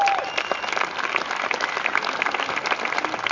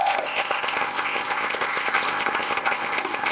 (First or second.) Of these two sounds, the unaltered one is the first